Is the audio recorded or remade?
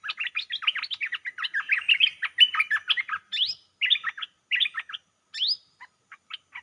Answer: recorded